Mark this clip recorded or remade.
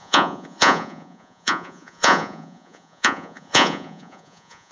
remade